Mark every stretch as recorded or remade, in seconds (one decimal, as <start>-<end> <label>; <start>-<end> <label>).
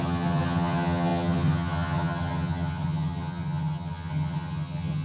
0.0-5.0 remade